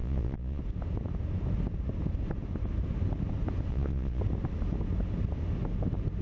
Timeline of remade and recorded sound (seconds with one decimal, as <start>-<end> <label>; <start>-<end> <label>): 0.0-0.6 remade; 0.6-3.7 recorded; 3.7-4.2 remade; 4.2-6.2 recorded